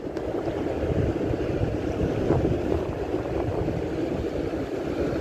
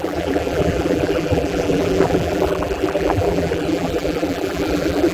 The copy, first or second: second